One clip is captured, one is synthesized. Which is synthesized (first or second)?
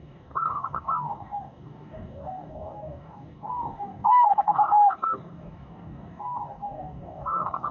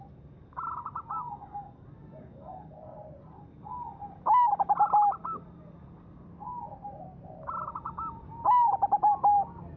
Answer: first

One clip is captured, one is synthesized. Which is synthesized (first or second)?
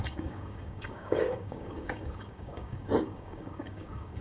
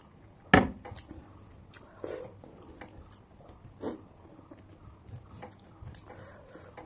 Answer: first